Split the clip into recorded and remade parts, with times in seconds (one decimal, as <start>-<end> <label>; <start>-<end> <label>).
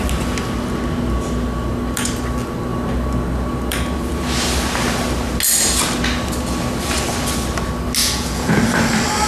0.0-8.0 recorded; 8.0-8.6 remade; 8.6-9.3 recorded